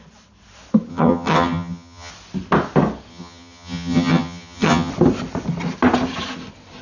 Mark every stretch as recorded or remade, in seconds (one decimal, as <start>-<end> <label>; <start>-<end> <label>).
0.0-0.9 recorded; 0.9-2.1 remade; 2.1-3.1 recorded; 3.1-4.9 remade; 4.9-6.8 recorded

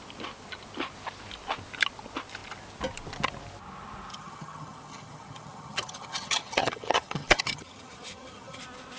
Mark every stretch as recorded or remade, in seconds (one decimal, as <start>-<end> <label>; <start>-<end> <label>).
0.0-4.1 recorded; 4.1-8.6 remade; 8.6-9.0 recorded

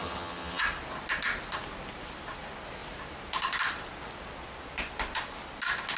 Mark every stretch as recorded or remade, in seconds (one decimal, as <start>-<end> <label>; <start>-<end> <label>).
0.0-0.6 remade; 0.6-6.0 recorded